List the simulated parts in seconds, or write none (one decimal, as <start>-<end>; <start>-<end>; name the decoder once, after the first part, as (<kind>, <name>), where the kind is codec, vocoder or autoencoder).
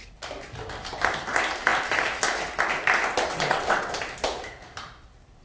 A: 3.3-3.9 (vocoder, WaveNeXt)